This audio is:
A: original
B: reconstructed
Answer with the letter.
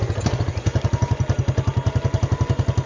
A